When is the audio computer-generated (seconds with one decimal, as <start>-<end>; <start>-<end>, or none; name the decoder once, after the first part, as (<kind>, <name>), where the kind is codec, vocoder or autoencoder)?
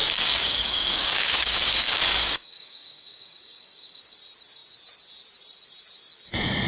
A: 0.0-4.0 (codec, DAC)